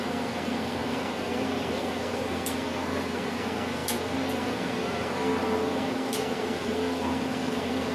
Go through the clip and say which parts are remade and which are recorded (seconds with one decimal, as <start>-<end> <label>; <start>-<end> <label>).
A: 0.0-7.9 remade

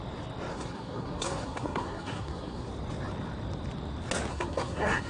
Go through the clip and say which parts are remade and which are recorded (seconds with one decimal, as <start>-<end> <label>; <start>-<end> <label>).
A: 0.0-0.5 recorded; 0.5-2.7 remade; 2.7-4.3 recorded; 4.3-5.1 remade

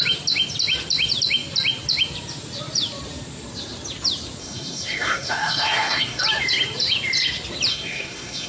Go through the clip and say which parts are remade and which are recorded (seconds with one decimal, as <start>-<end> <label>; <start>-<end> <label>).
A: 0.0-4.4 recorded; 4.4-6.2 remade; 6.2-7.7 recorded; 7.7-8.5 remade

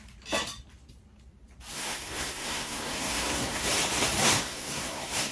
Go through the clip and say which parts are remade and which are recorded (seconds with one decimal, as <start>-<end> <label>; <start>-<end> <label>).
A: 0.0-1.7 recorded; 1.7-3.7 remade; 3.7-4.2 recorded; 4.2-5.3 remade

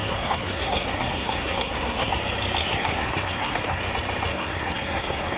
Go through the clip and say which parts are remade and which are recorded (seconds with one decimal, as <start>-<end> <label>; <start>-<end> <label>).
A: 0.0-2.1 remade; 2.1-2.6 recorded; 2.6-3.8 remade; 3.8-4.3 recorded; 4.3-5.4 remade

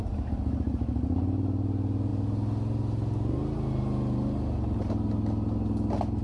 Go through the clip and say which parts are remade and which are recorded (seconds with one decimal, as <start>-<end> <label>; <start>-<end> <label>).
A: 0.0-6.2 recorded

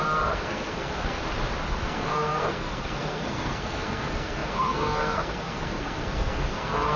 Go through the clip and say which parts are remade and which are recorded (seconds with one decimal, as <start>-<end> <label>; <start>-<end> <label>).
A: 0.0-1.2 remade; 1.2-1.8 recorded; 1.8-7.0 remade